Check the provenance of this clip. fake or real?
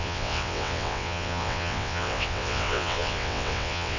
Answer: fake